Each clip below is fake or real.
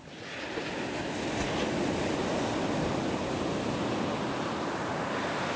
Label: real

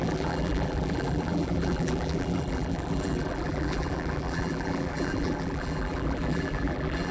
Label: fake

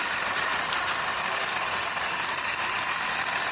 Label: fake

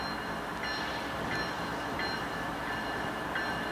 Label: real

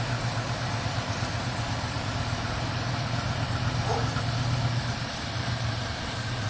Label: fake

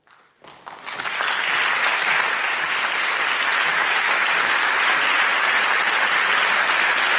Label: real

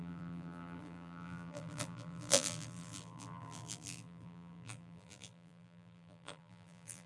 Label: fake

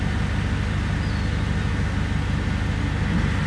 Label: real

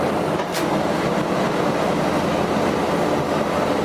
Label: real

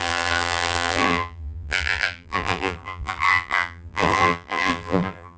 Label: fake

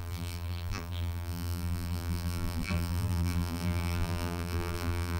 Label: fake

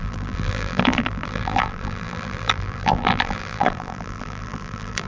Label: fake